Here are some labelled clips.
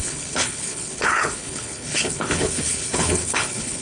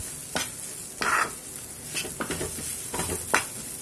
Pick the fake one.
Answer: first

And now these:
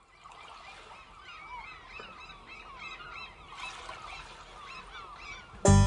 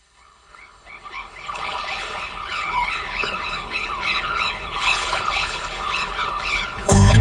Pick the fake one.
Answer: second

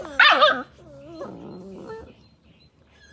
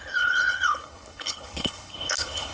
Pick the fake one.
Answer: second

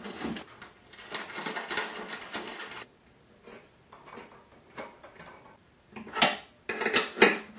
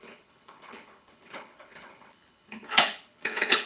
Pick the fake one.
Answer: second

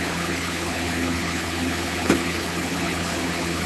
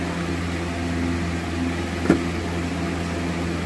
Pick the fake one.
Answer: first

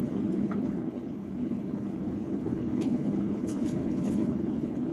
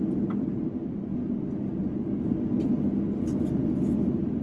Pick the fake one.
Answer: first